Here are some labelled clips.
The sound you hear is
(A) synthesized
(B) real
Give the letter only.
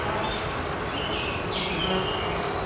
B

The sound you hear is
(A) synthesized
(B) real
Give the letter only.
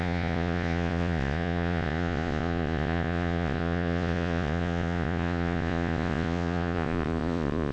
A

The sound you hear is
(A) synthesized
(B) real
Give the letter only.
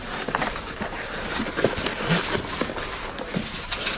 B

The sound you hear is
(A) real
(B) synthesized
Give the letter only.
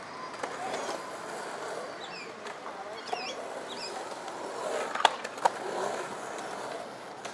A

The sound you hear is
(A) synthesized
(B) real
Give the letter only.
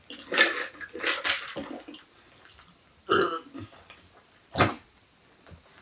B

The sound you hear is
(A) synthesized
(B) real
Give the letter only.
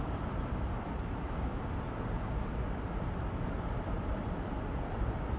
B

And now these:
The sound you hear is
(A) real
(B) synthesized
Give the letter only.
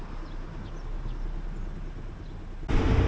A